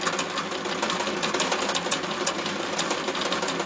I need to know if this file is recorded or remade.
recorded